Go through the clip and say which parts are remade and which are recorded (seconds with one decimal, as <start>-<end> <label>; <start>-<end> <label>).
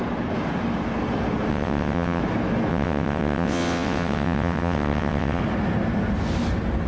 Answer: 0.0-1.5 recorded; 1.5-2.2 remade; 2.2-2.7 recorded; 2.7-5.4 remade; 5.4-6.9 recorded